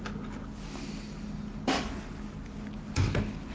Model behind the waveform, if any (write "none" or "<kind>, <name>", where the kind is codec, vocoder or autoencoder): none